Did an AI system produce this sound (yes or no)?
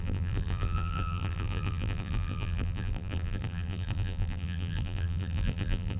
yes